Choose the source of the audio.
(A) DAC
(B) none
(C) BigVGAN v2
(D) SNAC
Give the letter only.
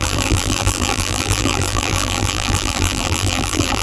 C